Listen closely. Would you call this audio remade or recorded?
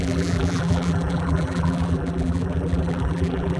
remade